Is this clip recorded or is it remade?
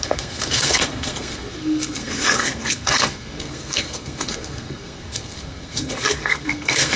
remade